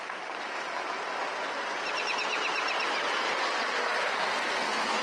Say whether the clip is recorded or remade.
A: recorded